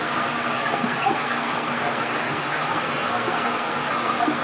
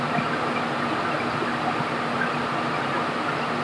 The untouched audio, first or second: second